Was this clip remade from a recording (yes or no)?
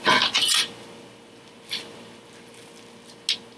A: no